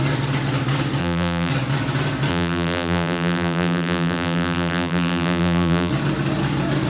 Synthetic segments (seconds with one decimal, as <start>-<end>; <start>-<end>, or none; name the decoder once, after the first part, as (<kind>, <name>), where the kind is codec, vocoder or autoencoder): 1.0-1.5 (vocoder, BigVGAN v2); 2.3-5.9